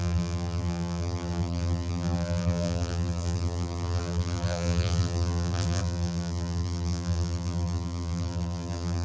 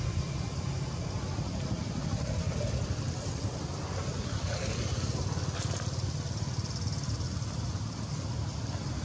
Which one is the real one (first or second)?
second